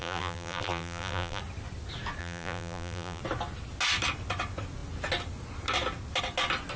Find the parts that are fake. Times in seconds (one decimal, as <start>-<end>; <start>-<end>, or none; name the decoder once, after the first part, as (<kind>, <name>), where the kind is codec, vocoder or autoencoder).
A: 0.0-1.4 (vocoder, BigVGAN v2); 2.2-3.2